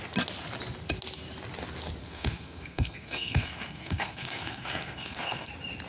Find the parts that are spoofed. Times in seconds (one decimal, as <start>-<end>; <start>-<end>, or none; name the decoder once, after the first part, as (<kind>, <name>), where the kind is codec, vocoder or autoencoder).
2.0-5.5 (codec, SNAC)